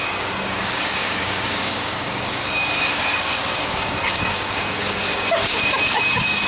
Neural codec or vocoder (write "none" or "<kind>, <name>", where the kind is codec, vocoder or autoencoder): codec, DAC